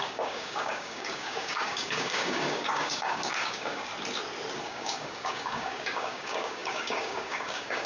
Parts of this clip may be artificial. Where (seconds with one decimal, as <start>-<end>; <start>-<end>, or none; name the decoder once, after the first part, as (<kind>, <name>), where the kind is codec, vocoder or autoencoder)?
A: 0.0-3.9 (codec, DAC); 4.6-7.9